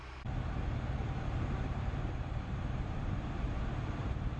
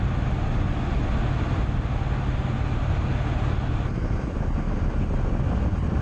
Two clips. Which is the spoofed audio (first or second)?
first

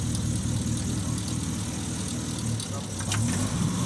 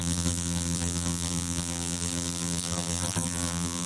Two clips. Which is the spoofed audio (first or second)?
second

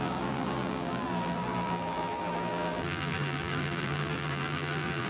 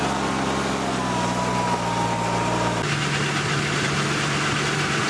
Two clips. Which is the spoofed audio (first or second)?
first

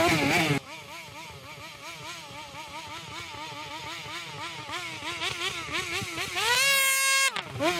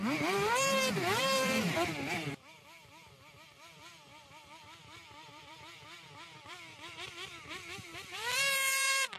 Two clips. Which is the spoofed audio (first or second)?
second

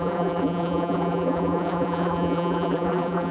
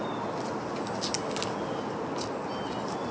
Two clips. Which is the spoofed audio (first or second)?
first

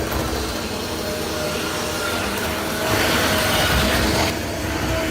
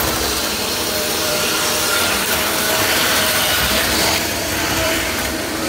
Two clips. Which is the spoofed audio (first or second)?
second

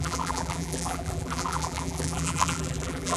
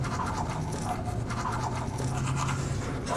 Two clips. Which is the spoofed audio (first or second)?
first